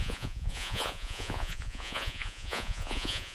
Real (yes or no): no